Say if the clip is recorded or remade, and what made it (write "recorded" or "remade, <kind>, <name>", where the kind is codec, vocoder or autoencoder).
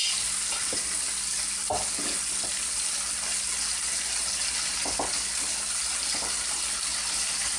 recorded